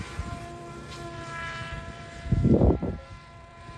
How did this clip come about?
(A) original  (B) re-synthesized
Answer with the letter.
B